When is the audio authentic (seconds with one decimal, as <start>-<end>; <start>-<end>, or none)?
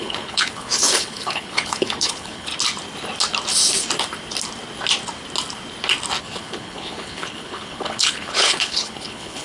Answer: 2.5-6.2